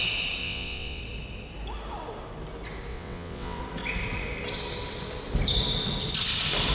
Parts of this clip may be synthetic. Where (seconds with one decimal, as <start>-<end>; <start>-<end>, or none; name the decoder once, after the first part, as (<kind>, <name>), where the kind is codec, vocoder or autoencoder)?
0.4-1.0 (vocoder, WaveNeXt); 2.9-3.6